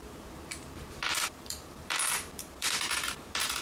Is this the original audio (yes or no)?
no